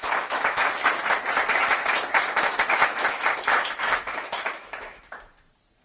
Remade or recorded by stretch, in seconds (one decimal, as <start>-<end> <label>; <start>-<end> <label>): 0.0-1.0 remade; 1.0-1.5 recorded; 1.5-5.0 remade; 5.0-5.8 recorded